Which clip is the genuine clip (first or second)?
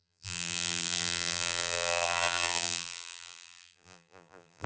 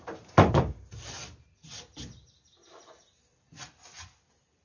second